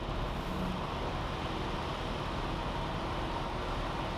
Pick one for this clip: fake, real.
real